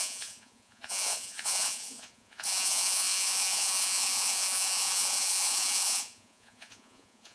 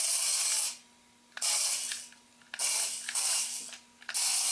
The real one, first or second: second